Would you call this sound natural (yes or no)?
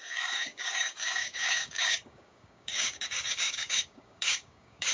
no